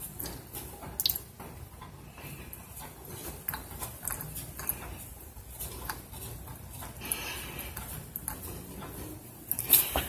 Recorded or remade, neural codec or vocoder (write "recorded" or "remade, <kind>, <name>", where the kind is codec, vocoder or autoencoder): recorded